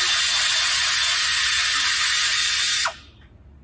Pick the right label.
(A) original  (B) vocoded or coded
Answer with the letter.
A